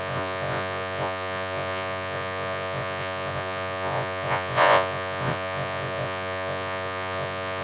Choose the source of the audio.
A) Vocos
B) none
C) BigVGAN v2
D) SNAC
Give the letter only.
A